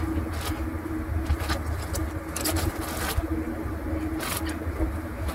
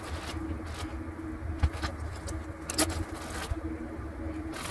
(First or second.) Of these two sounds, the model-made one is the first